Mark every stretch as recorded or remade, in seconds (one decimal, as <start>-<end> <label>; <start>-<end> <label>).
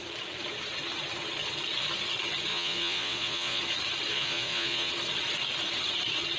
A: 0.0-2.5 recorded; 2.5-3.6 remade; 3.6-4.1 recorded; 4.1-4.9 remade; 4.9-6.4 recorded